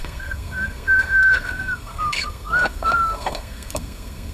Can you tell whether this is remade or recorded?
remade